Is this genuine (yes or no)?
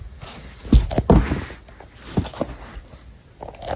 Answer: yes